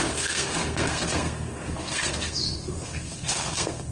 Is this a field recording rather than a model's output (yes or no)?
no